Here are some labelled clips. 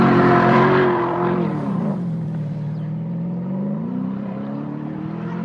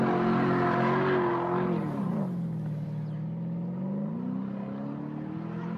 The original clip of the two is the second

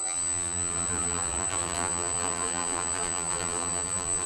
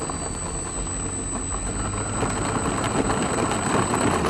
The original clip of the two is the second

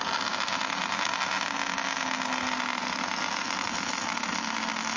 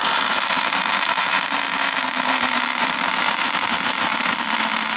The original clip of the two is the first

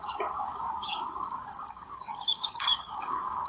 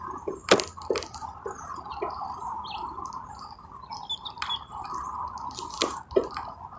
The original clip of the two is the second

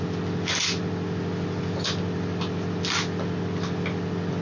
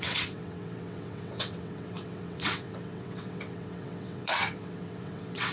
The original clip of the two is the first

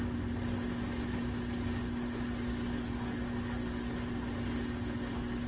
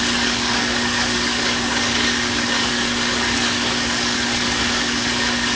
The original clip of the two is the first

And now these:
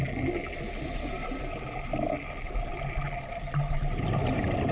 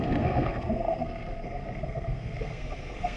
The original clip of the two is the first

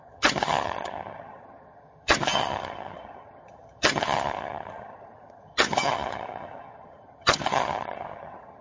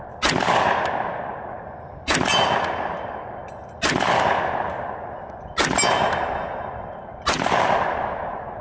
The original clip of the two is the second